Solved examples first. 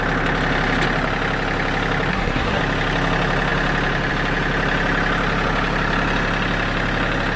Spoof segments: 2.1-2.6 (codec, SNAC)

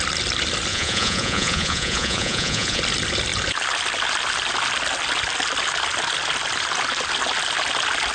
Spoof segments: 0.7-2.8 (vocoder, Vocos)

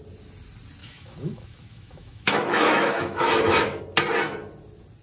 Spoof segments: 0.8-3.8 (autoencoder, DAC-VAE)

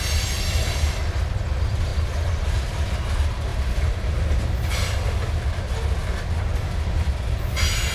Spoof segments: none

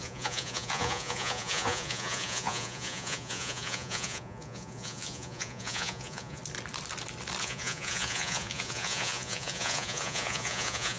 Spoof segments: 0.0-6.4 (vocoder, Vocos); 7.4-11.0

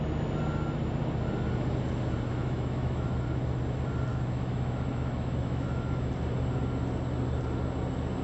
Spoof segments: 2.3-3.2 (autoencoder, DAC-VAE); 4.1-6.1